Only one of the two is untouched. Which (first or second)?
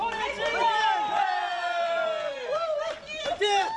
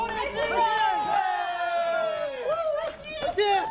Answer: second